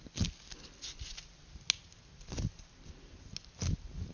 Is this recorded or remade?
recorded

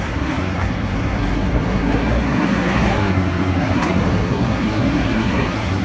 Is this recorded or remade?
remade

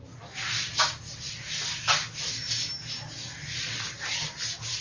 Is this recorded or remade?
recorded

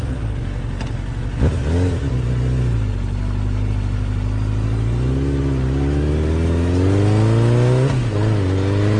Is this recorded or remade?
recorded